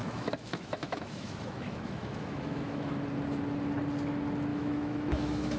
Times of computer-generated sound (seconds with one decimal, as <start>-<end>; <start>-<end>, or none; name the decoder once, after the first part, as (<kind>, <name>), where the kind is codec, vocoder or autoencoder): 0.0-2.9 (autoencoder, DAC-VAE); 4.5-5.6